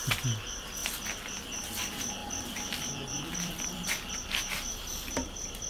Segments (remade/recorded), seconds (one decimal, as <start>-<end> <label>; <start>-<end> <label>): 0.0-0.8 recorded; 0.8-1.4 remade; 1.4-2.2 recorded; 2.2-5.7 remade